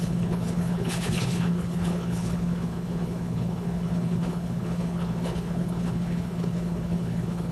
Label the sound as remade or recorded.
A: remade